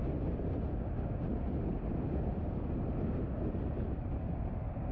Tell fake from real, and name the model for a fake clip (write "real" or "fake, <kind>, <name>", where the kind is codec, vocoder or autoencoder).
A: real